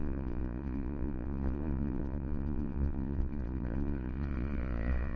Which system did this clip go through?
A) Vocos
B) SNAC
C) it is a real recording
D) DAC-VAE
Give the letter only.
A